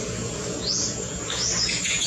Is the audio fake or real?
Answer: fake